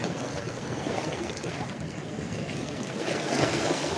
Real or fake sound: fake